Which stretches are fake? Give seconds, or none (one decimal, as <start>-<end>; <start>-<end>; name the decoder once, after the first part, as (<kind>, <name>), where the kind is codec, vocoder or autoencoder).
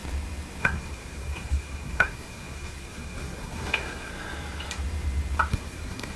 0.6-4.1 (codec, SNAC); 5.5-6.2